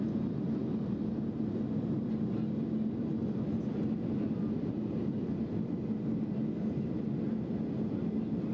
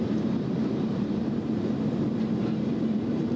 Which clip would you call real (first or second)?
first